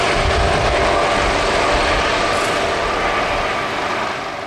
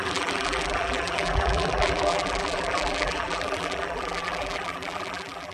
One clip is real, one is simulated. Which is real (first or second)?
first